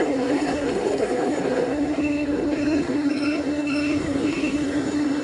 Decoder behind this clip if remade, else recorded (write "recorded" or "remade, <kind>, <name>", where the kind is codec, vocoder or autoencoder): remade, codec, SNAC